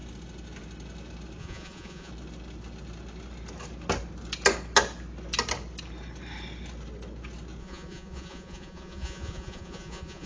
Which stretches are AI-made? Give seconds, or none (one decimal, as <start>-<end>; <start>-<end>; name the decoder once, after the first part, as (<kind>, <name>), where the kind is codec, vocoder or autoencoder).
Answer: 1.4-2.1 (vocoder, Vocos); 7.6-10.3